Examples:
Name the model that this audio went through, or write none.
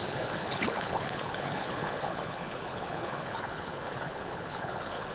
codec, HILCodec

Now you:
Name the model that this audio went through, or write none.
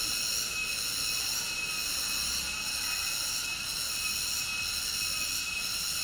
none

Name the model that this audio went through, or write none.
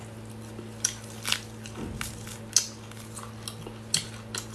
none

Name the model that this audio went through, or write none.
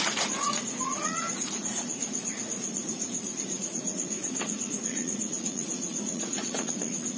vocoder, Vocos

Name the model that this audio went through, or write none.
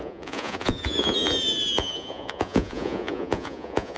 vocoder, Vocos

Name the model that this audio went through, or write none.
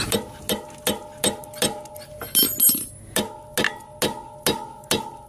none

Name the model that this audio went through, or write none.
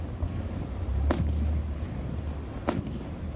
none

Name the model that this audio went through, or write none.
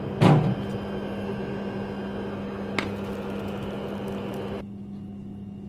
none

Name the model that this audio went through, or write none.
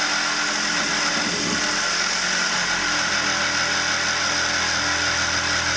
none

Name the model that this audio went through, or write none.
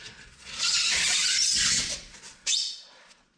vocoder, Vocos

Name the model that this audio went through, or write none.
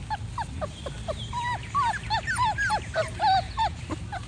none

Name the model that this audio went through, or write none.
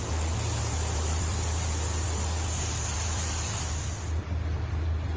none